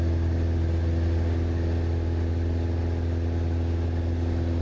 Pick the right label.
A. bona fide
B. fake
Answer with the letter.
A